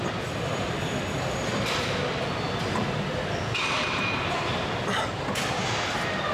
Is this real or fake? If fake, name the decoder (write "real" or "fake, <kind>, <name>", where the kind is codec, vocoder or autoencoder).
fake, vocoder, BigVGAN v2